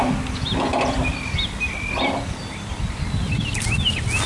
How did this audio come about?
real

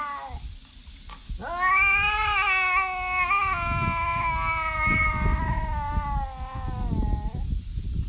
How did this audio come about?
real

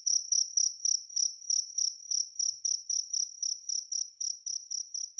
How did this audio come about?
fake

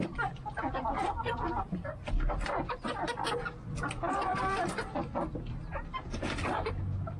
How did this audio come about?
real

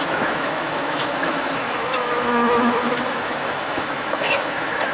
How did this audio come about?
fake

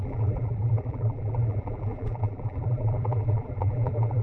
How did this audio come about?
fake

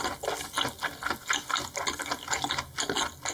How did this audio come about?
real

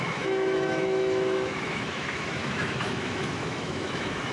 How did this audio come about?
fake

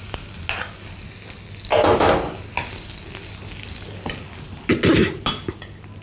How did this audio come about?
real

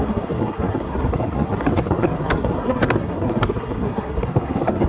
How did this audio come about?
fake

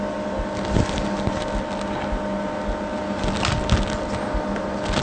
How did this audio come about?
real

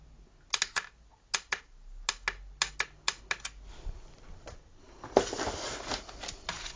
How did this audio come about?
real